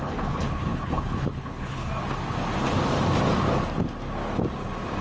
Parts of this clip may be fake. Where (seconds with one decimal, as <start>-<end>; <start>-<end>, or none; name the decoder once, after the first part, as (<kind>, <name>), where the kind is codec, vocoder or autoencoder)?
0.0-1.9 (codec, HILCodec)